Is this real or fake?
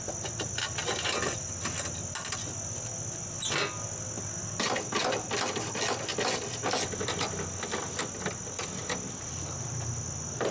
real